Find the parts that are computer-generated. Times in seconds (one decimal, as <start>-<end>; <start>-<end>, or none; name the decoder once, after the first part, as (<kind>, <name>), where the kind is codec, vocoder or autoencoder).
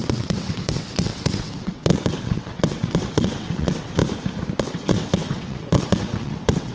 0.0-4.0 (vocoder, WaveNeXt); 4.6-6.7